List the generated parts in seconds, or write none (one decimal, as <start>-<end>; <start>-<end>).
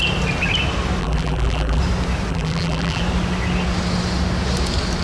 1.0-1.8; 2.3-3.0